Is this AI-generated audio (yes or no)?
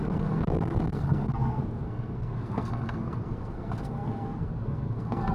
yes